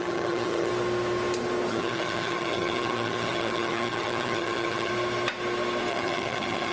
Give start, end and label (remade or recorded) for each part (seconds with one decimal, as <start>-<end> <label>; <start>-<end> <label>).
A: 0.0-0.7 remade; 0.7-1.7 recorded; 1.7-4.9 remade; 4.9-5.9 recorded; 5.9-6.7 remade

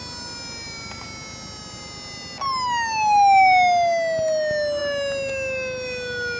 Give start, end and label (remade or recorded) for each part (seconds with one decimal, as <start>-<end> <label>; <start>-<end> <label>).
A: 0.0-6.4 recorded

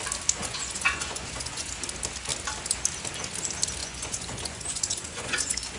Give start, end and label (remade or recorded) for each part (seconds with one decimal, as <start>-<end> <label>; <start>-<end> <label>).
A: 0.0-0.4 recorded; 0.4-1.7 remade; 1.7-3.8 recorded; 3.8-5.8 remade